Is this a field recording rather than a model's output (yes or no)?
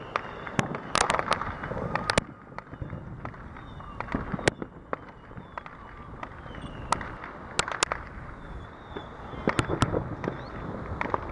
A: yes